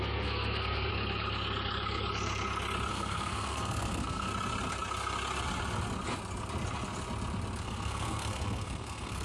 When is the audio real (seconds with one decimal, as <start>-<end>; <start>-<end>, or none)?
0.9-2.9; 4.3-7.6